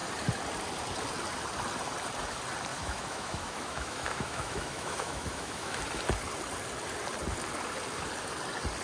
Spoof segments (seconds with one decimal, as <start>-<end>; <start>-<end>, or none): 2.7-5.8